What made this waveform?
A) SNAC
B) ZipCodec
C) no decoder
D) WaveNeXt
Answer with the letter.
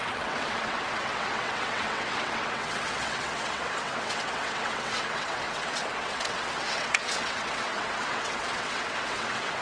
D